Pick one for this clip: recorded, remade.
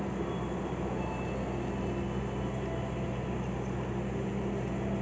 recorded